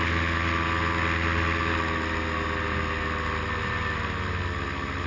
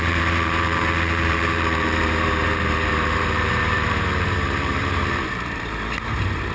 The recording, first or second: first